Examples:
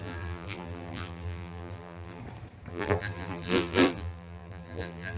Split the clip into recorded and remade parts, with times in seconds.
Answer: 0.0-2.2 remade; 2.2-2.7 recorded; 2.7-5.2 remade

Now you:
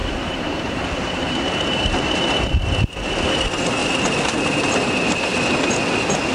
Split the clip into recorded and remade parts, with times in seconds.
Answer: 0.0-3.3 remade; 3.3-3.8 recorded; 3.8-4.7 remade; 4.7-6.3 recorded

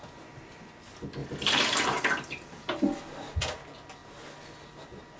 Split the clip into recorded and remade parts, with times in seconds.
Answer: 0.0-1.2 recorded; 1.2-3.0 remade; 3.0-5.2 recorded

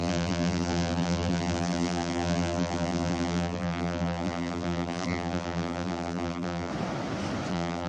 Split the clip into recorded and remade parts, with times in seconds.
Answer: 0.0-6.7 remade; 6.7-7.5 recorded; 7.5-7.9 remade

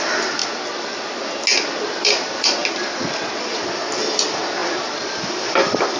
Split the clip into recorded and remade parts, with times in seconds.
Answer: 0.0-0.4 remade; 0.4-2.0 recorded; 2.0-4.6 remade; 4.6-5.1 recorded; 5.1-6.0 remade

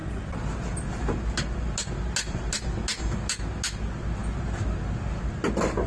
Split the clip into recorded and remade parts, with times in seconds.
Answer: 0.0-5.9 recorded